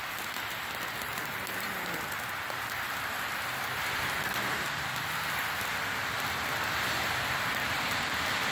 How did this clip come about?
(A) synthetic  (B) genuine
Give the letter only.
A